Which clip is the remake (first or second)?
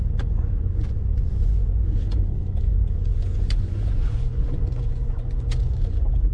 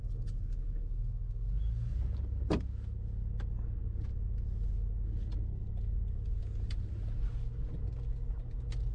first